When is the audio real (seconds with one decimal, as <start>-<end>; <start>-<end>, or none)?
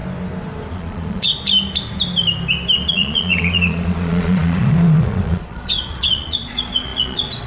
0.0-0.7; 1.3-2.9